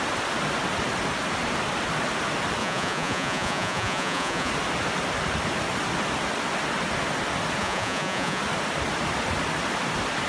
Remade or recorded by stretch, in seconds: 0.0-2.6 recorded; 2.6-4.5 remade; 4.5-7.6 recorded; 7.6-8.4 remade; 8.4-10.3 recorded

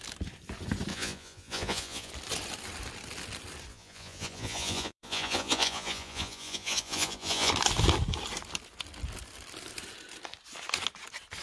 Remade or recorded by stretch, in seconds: 0.0-0.9 recorded; 0.9-2.1 remade; 2.1-3.7 recorded; 3.7-7.5 remade; 7.5-11.4 recorded

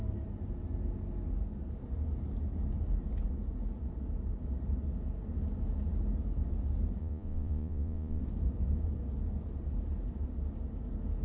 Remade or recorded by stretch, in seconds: 0.0-7.0 recorded; 7.0-8.2 remade; 8.2-11.2 recorded

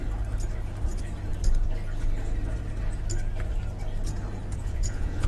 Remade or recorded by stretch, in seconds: 0.0-4.6 recorded; 4.6-5.3 remade

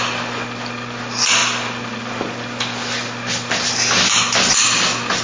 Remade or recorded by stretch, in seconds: 0.0-5.2 recorded

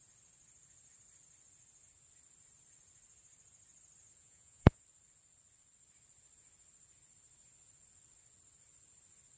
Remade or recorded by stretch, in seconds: 0.0-4.2 recorded; 4.2-4.8 remade; 4.8-9.4 recorded